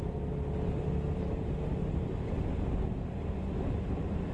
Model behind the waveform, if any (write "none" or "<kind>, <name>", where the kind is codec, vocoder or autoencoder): none